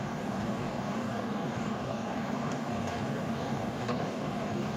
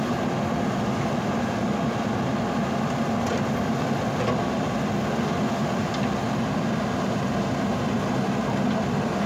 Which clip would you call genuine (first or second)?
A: second